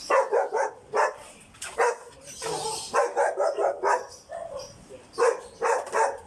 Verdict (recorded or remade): recorded